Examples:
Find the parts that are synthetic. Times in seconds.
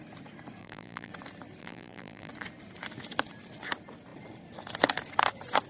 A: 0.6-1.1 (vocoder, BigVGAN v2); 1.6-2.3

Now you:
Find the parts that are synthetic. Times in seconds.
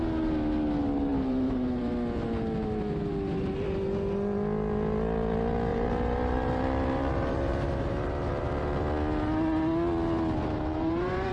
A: 1.1-1.8 (vocoder, BigVGAN v2); 5.7-8.8; 10.7-11.3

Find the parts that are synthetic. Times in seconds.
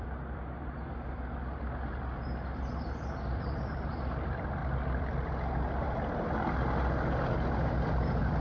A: 0.0-8.4 (vocoder, BigVGAN v2)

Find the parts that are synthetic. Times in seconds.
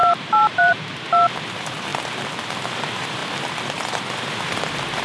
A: 0.0-1.0 (vocoder, BigVGAN v2)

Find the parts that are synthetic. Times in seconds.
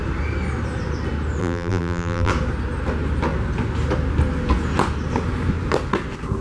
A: 1.4-2.3 (vocoder, BigVGAN v2)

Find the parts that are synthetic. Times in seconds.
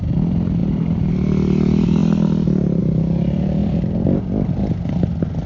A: 0.6-1.1 (vocoder, BigVGAN v2); 3.6-4.2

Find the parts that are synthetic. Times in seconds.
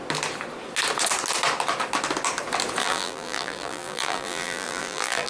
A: 2.8-5.3 (vocoder, BigVGAN v2)